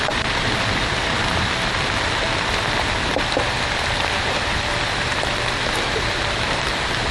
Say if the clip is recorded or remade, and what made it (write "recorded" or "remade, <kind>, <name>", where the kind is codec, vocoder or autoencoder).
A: recorded